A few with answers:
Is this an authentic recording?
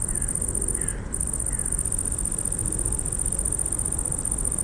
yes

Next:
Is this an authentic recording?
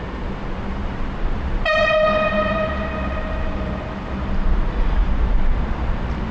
no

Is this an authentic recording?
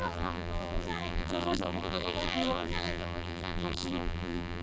no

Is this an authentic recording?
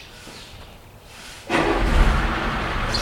yes